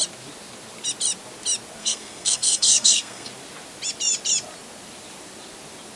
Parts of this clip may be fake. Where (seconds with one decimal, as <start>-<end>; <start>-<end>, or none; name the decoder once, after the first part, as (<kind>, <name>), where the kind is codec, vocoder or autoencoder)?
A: 1.8-3.3 (codec, SNAC)